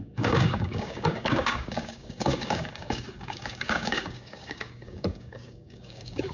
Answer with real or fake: fake